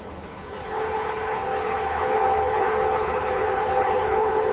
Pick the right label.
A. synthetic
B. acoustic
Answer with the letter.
A